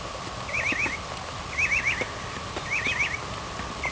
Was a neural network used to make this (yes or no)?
no